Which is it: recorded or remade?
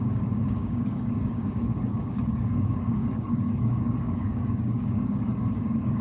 remade